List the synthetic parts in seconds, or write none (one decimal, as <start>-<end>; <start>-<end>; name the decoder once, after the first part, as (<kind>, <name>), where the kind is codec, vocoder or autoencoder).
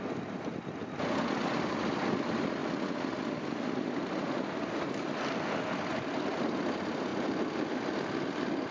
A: none